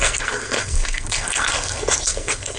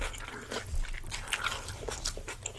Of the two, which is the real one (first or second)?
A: second